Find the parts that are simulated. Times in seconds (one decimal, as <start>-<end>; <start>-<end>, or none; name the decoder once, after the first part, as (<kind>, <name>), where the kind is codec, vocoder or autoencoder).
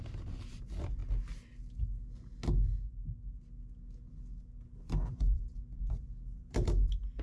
0.0-1.0 (vocoder, BigVGAN v2); 4.8-7.2